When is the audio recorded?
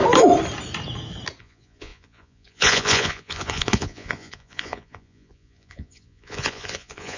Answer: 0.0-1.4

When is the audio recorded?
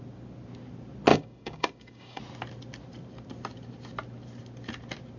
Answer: 0.0-1.1; 2.2-5.2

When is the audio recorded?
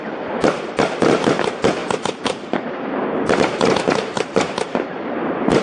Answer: 0.0-1.8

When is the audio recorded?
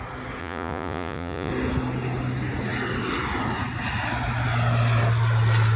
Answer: 0.0-0.4; 1.5-5.8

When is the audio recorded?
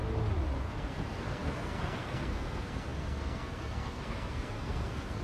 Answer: 0.0-0.6